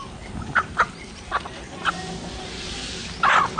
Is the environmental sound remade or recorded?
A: recorded